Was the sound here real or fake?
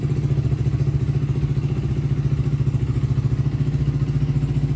real